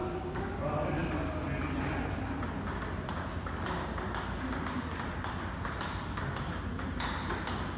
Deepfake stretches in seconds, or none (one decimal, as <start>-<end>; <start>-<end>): 0.0-0.6